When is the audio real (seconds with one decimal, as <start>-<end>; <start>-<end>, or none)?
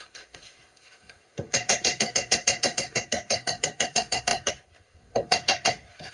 none